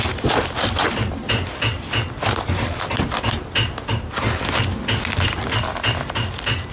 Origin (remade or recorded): recorded